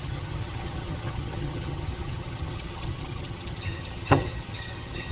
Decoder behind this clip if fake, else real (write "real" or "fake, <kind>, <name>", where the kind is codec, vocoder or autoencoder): fake, vocoder, HiFi-GAN